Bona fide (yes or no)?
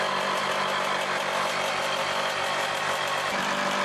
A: yes